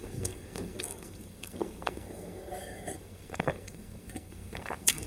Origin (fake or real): fake